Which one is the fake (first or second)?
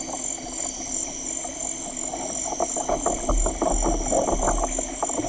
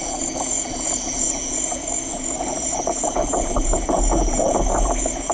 second